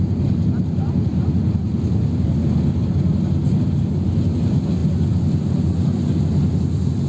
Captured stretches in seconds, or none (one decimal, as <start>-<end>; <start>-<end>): 0.0-7.1